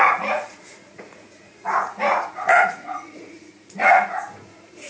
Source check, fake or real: fake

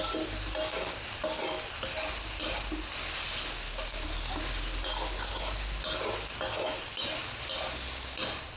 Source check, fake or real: real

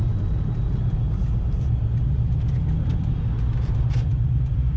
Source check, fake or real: fake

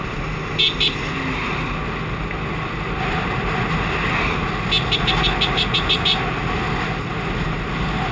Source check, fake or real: real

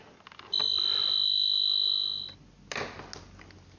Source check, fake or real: real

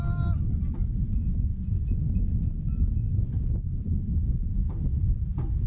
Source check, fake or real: real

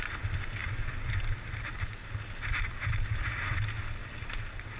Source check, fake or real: real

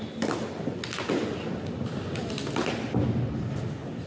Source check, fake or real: real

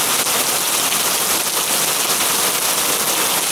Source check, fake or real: real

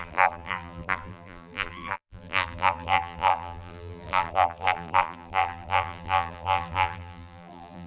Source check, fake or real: fake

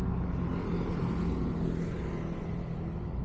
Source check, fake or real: real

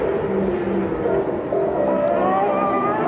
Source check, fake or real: real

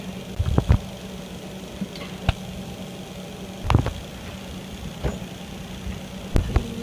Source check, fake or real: real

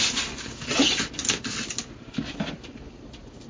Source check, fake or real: real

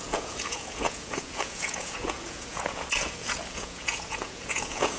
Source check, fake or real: fake